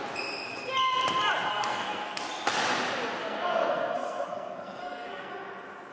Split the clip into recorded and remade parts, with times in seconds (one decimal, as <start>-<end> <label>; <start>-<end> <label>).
0.0-1.5 recorded; 1.5-2.2 remade; 2.2-3.2 recorded; 3.2-5.3 remade; 5.3-5.9 recorded